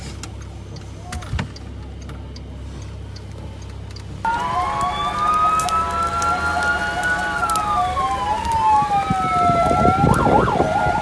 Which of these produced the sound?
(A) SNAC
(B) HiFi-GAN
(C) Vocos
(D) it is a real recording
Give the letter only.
D